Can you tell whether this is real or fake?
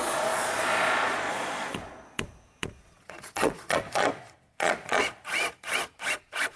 fake